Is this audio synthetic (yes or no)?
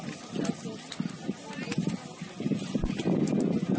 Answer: no